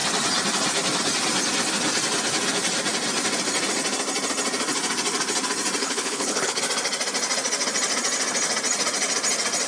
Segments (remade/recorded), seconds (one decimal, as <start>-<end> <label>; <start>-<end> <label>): 0.0-5.8 recorded; 5.8-6.6 remade; 6.6-9.7 recorded